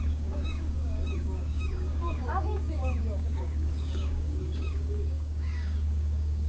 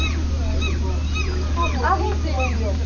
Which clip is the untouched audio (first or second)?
second